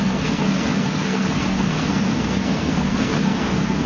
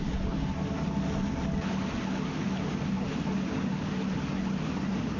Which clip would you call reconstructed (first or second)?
first